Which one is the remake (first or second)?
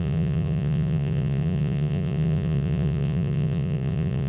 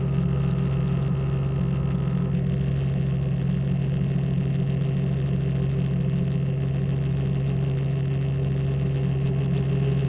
first